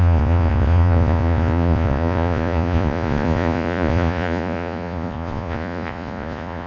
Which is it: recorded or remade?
remade